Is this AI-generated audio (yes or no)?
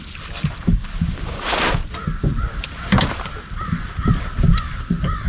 yes